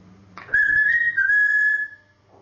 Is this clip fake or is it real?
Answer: real